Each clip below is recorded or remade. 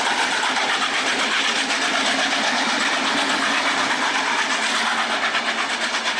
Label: recorded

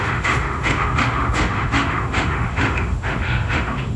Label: remade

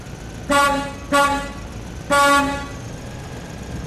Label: recorded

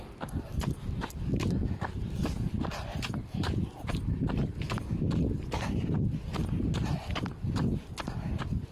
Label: recorded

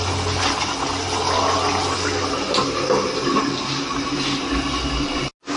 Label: recorded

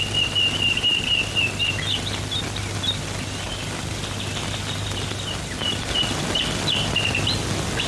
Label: recorded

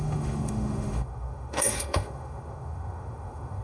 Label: remade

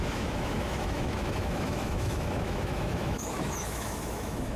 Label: remade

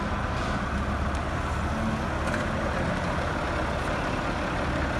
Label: recorded